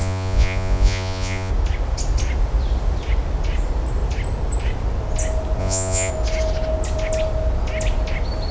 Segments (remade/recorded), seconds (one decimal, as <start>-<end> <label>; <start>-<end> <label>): 0.0-1.5 remade; 1.5-5.6 recorded; 5.6-6.1 remade; 6.1-8.5 recorded